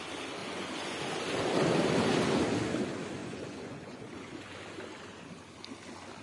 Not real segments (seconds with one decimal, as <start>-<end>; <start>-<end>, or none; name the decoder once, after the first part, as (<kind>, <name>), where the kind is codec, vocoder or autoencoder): 0.4-1.0 (vocoder, Vocos); 3.2-4.4